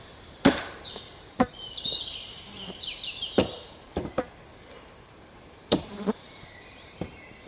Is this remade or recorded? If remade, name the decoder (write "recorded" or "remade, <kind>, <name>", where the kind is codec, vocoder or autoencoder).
remade, vocoder, BigVGAN v2